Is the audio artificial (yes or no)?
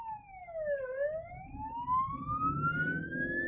no